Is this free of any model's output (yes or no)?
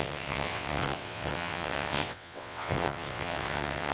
no